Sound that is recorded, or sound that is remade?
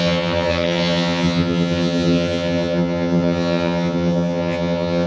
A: remade